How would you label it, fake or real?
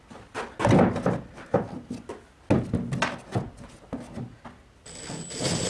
real